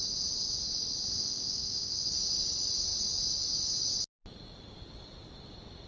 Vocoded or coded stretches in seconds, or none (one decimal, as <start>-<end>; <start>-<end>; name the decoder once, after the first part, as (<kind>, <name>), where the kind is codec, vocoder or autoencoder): 1.1-1.9 (codec, ZipCodec)